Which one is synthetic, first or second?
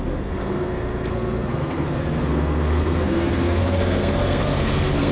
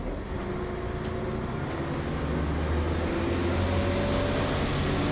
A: first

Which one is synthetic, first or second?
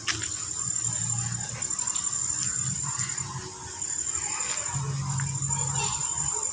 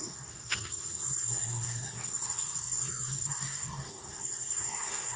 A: second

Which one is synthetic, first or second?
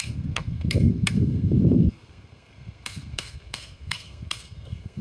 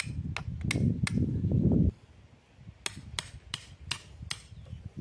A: first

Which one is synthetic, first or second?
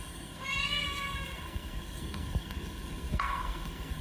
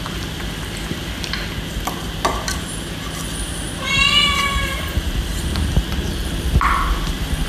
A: first